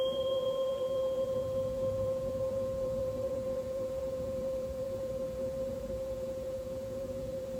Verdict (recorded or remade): remade